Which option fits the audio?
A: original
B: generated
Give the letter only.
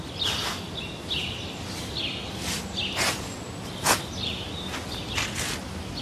A